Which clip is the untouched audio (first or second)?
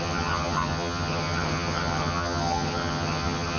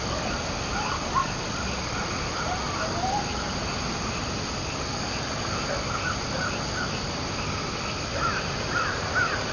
second